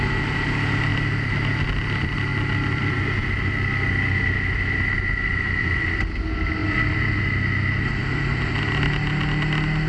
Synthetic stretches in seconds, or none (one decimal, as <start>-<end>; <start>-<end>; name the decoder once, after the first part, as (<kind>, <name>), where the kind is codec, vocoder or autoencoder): 2.3-3.0 (vocoder, BigVGAN v2); 6.6-7.2; 8.0-8.6